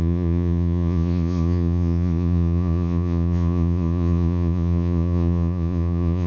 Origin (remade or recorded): remade